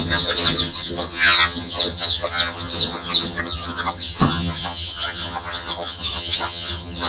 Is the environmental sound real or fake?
fake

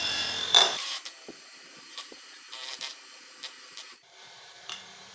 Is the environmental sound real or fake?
fake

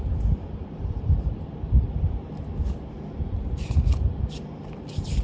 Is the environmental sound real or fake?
fake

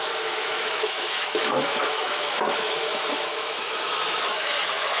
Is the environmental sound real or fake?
fake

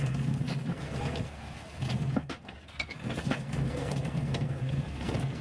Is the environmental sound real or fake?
fake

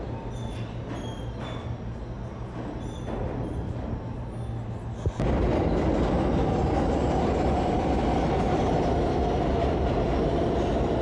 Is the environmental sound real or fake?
real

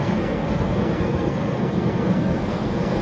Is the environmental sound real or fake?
fake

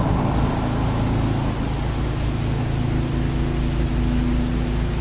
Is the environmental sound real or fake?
real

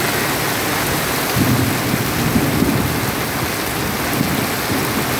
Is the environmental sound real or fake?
real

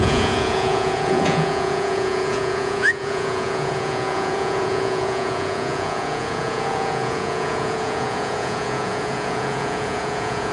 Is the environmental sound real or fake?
fake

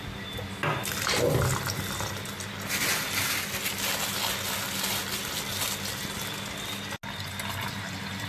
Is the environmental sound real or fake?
real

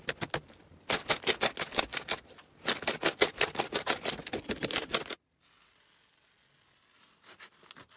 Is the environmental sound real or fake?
real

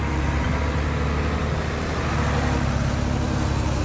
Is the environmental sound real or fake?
real